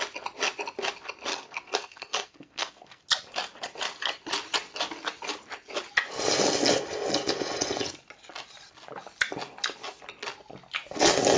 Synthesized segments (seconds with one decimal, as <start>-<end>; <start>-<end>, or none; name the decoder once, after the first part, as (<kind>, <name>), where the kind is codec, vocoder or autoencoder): 1.3-3.0 (codec, SNAC)